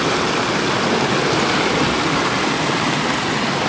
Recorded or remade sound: recorded